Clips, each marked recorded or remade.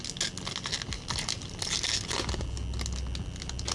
recorded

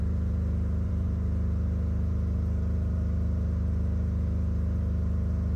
remade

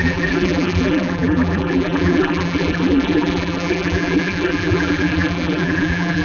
remade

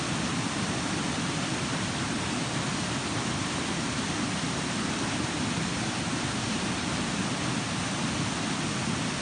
recorded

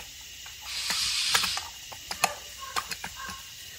recorded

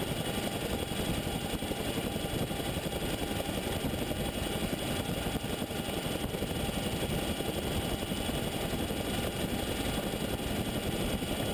recorded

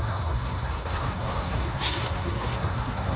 remade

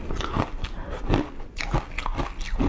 recorded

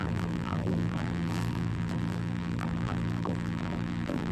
remade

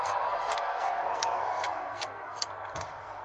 remade